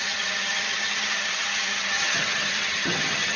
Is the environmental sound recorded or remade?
remade